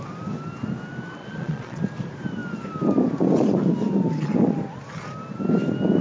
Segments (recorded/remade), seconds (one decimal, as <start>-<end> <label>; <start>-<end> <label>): 0.0-1.2 recorded; 1.2-1.8 remade; 1.8-6.0 recorded